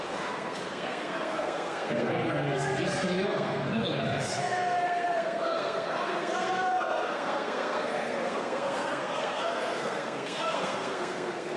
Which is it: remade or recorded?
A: remade